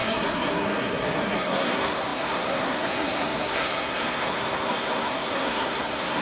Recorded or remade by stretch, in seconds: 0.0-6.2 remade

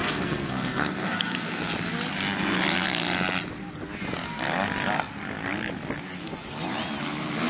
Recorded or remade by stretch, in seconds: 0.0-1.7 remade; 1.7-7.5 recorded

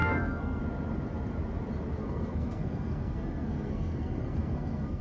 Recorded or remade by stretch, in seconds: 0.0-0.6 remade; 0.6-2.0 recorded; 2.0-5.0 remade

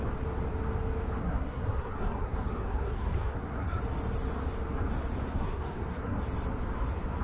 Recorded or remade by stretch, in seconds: 0.0-1.2 recorded; 1.2-3.8 remade; 3.8-5.3 recorded; 5.3-6.2 remade; 6.2-7.2 recorded

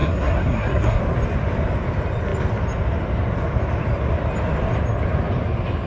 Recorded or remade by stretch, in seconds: 0.0-1.0 remade; 1.0-5.9 recorded

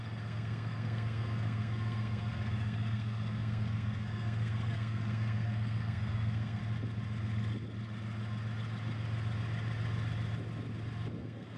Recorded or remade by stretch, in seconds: 0.0-6.6 remade; 6.6-11.2 recorded; 11.2-11.6 remade

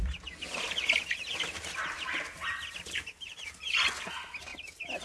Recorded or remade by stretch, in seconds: 0.0-5.0 recorded

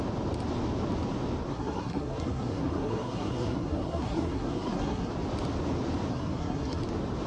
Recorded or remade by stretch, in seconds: 0.0-1.5 recorded; 1.5-5.1 remade; 5.1-6.1 recorded; 6.1-6.8 remade; 6.8-7.3 recorded